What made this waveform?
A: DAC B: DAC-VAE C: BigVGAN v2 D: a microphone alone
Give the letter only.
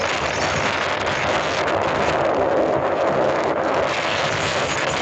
D